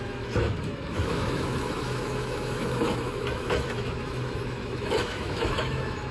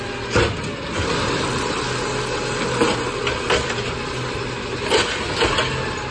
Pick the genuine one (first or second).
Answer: second